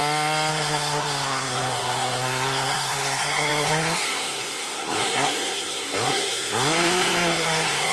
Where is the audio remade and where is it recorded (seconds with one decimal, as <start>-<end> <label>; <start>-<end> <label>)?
0.0-0.5 recorded; 0.5-7.9 remade